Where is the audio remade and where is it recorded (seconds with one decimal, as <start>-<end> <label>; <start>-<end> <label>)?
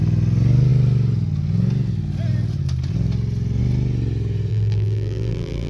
0.0-4.5 recorded; 4.5-5.7 remade